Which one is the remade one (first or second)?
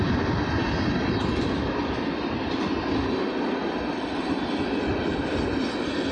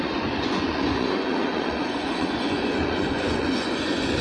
second